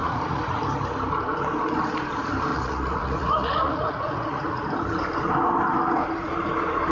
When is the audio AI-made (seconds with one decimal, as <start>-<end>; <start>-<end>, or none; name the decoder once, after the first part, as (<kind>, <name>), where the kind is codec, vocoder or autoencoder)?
0.0-0.6 (vocoder, Vocos); 2.5-4.6